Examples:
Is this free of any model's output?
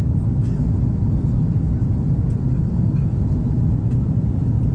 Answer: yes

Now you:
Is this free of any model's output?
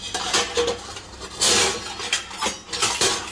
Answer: yes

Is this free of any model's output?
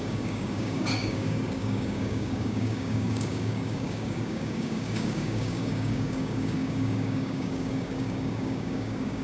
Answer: no